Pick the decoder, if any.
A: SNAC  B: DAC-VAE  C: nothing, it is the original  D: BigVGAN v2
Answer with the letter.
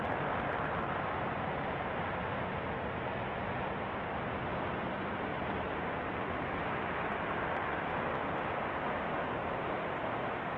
C